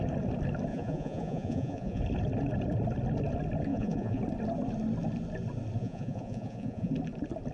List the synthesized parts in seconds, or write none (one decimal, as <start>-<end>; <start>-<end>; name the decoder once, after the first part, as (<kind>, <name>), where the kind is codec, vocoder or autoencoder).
0.7-2.0 (vocoder, Vocos); 3.7-4.2; 5.8-6.9